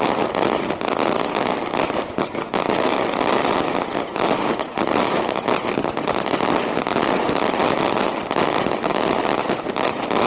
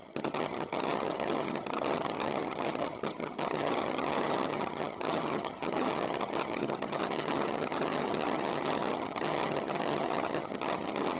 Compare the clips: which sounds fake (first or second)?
second